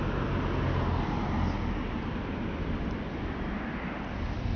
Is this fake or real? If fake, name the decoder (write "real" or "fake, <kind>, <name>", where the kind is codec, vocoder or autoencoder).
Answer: real